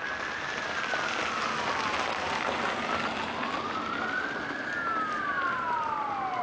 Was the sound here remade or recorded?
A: recorded